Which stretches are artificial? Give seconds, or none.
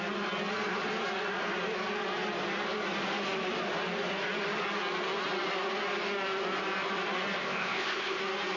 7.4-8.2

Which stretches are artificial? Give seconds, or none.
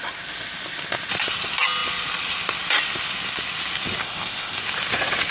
4.0-4.6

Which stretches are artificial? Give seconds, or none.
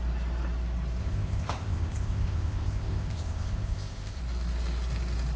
1.0-4.2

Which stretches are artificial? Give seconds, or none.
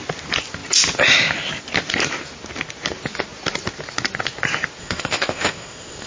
4.8-6.1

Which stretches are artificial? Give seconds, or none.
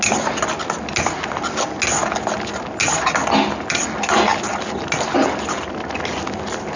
none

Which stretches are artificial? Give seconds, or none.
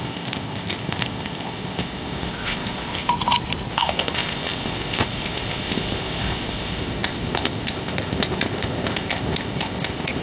0.0-3.1; 3.7-10.2